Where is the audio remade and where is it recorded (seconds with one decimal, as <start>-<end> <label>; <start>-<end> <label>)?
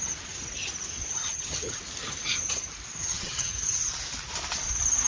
0.0-1.2 recorded; 1.2-1.8 remade; 1.8-3.0 recorded; 3.0-3.5 remade; 3.5-5.1 recorded